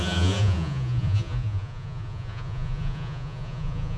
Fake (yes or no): yes